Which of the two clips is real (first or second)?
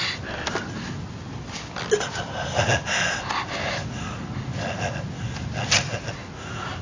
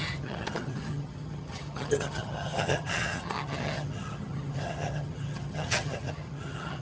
first